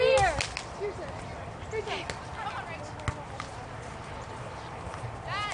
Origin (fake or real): real